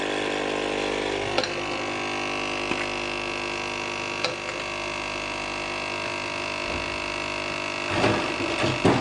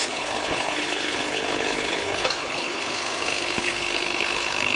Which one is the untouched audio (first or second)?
first